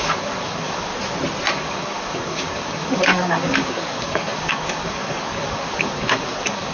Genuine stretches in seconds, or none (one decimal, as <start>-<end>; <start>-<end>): 0.9-1.5